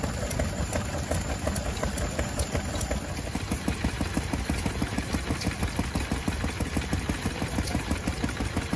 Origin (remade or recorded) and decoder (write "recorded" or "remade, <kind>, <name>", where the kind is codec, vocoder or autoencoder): recorded